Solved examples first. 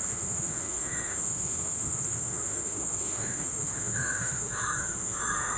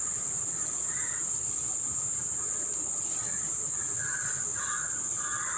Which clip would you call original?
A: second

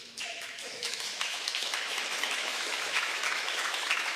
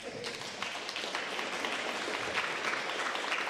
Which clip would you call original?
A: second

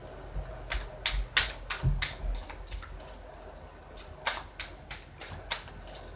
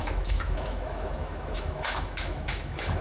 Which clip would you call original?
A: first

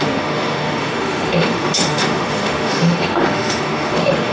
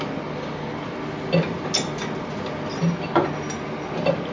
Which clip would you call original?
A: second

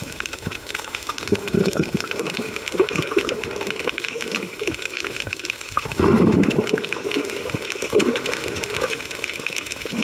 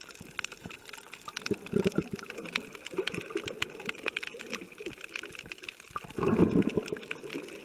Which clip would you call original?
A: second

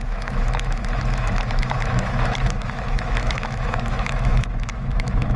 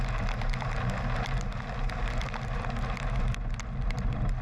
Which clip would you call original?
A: second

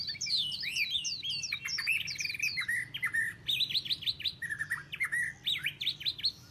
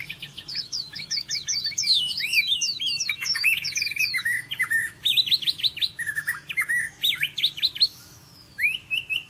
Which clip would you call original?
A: first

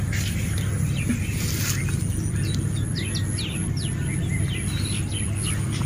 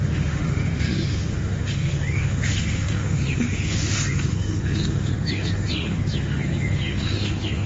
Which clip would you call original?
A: first